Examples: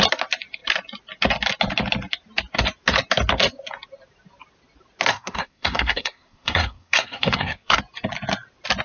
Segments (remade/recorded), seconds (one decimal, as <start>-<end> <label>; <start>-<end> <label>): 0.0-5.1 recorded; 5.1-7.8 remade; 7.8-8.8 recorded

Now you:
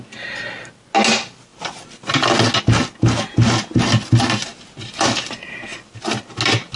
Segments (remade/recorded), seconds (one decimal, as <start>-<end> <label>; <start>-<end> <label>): 0.0-6.8 recorded

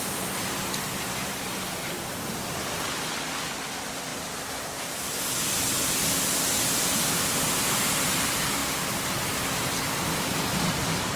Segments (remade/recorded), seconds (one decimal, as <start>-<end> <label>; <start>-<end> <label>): 0.0-8.6 remade; 8.6-9.6 recorded; 9.6-11.2 remade

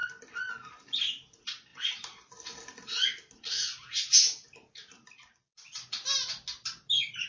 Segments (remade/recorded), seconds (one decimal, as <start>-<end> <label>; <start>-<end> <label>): 0.0-7.3 recorded